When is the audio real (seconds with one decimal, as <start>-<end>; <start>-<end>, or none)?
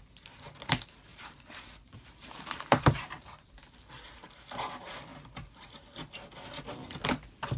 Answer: 0.0-1.1; 3.5-7.6